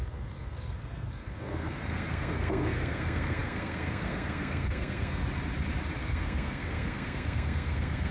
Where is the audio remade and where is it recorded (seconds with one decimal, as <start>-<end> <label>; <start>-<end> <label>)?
0.0-5.2 remade; 5.2-6.0 recorded; 6.0-8.1 remade